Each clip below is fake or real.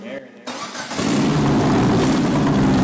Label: real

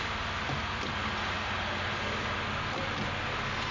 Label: real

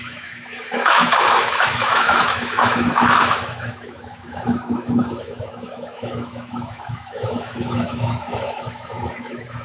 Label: fake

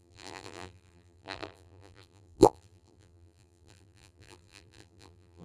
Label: fake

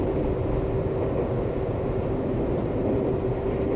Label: real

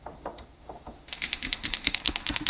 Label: fake